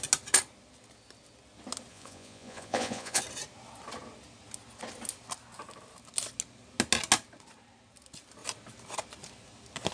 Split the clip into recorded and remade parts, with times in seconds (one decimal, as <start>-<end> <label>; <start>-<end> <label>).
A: 0.0-1.9 recorded; 1.9-3.2 remade; 3.2-9.9 recorded